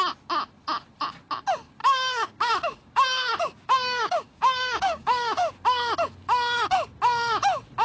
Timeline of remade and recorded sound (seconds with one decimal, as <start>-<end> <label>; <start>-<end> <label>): 0.0-1.8 recorded; 1.8-5.5 remade; 5.5-7.8 recorded